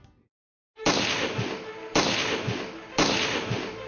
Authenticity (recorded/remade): recorded